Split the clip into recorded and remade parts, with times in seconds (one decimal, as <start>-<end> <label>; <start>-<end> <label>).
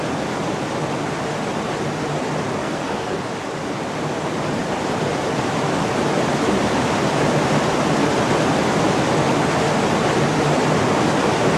0.0-2.6 recorded; 2.6-3.2 remade; 3.2-11.6 recorded